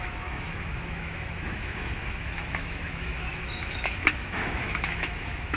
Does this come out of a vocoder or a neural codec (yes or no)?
yes